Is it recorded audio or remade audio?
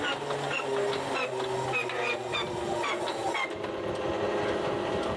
recorded